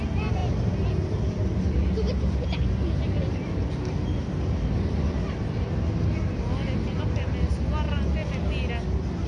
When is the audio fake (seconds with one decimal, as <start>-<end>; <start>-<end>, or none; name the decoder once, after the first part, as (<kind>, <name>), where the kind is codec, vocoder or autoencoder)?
none